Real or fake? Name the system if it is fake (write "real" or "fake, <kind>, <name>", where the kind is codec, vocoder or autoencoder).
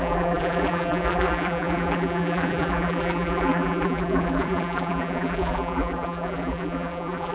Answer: fake, vocoder, BigVGAN v2